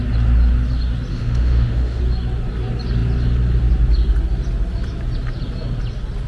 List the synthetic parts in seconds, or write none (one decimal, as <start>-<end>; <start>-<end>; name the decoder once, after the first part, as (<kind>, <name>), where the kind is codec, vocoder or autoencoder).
1.1-2.0 (autoencoder, DAC-VAE)